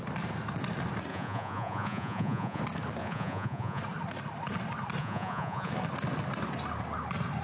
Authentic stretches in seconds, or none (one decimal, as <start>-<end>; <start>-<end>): 0.0-1.1; 2.6-3.0; 3.8-5.0; 5.7-7.4